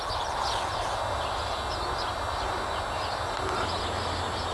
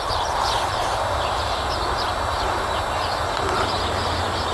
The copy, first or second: second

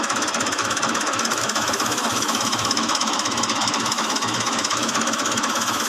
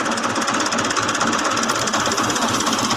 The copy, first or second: first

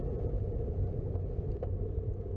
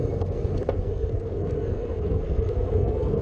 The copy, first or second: second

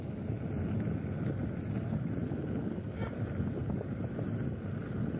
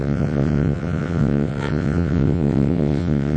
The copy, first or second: second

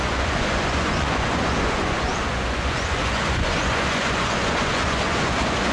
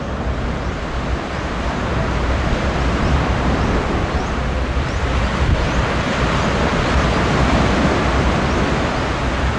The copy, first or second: first